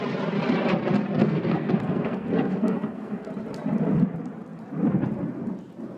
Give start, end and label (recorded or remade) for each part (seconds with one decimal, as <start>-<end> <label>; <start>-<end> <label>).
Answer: 0.0-1.2 recorded; 1.2-3.3 remade; 3.3-6.0 recorded

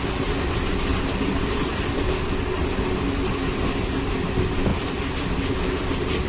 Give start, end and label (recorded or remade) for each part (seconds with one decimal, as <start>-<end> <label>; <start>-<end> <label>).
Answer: 0.0-6.3 recorded

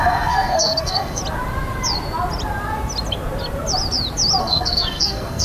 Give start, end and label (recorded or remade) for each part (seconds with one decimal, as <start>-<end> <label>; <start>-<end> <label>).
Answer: 0.0-1.2 remade; 1.2-4.4 recorded; 4.4-5.4 remade

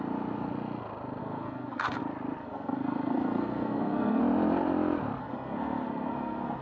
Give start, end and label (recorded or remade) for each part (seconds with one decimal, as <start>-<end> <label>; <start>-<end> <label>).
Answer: 0.0-1.2 recorded; 1.2-2.0 remade; 2.0-2.4 recorded; 2.4-4.2 remade; 4.2-5.2 recorded; 5.2-6.6 remade

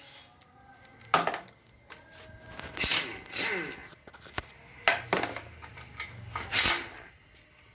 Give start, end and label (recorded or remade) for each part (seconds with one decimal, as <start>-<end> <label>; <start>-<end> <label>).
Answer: 0.0-7.7 recorded

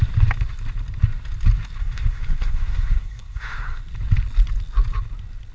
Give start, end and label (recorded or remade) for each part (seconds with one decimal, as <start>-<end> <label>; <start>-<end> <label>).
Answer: 0.0-1.8 recorded; 1.8-3.8 remade; 3.8-5.5 recorded